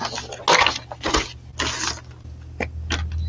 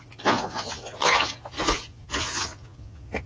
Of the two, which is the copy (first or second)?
second